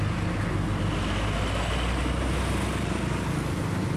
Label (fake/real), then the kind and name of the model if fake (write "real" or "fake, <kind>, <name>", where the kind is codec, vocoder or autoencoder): real